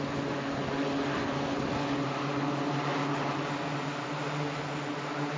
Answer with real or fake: real